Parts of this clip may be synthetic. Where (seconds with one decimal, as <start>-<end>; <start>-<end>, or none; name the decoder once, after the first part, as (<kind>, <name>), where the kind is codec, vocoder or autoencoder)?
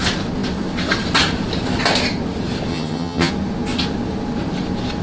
2.7-3.3 (vocoder, HiFi-GAN)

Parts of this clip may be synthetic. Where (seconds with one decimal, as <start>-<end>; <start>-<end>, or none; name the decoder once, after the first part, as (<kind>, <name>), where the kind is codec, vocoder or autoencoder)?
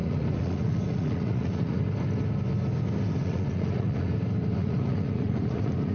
0.0-1.8 (vocoder, Vocos); 3.2-4.1; 4.6-5.9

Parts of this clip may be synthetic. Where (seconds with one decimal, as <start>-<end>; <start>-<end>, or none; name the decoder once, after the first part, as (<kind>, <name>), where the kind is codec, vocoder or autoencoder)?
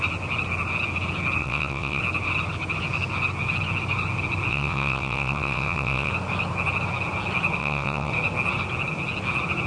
1.4-2.0 (vocoder, WaveNeXt); 4.5-6.1; 7.6-8.1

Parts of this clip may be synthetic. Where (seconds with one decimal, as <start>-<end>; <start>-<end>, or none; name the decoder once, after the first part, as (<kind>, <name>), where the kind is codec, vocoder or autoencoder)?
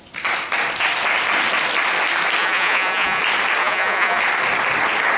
2.4-3.2 (vocoder, Vocos); 3.6-4.2